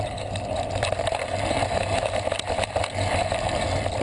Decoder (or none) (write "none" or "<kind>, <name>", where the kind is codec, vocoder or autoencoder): none